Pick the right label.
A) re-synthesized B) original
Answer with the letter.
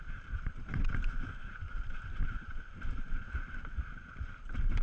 A